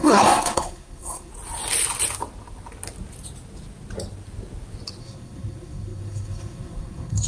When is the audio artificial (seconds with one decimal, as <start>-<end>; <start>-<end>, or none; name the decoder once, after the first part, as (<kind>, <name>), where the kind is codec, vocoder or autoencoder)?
0.0-1.3 (codec, SNAC); 5.0-7.3